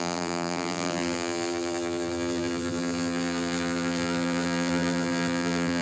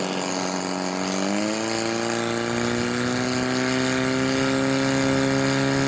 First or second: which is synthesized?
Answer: first